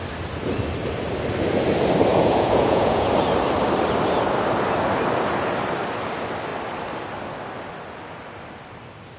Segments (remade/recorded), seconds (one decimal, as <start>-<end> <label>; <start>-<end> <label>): 0.0-2.1 recorded; 2.1-3.1 remade; 3.1-9.2 recorded